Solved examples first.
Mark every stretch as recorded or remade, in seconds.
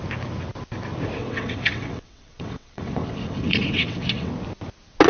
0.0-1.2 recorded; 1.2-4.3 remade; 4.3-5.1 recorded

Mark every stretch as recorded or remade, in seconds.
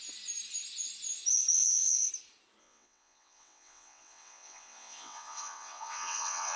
0.0-1.5 recorded; 1.5-2.1 remade; 2.1-2.6 recorded; 2.6-6.6 remade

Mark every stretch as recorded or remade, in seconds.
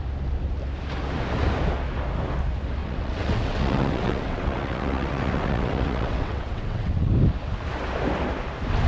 0.0-2.8 recorded; 2.8-7.1 remade; 7.1-8.9 recorded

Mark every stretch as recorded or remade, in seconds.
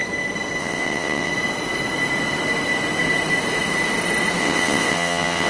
0.0-0.6 recorded; 0.6-1.3 remade; 1.3-4.4 recorded; 4.4-5.5 remade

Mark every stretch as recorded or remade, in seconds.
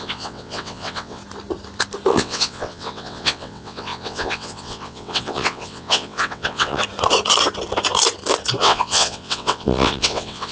0.0-1.2 remade; 1.2-2.1 recorded; 2.1-6.8 remade; 6.8-8.6 recorded; 8.6-10.5 remade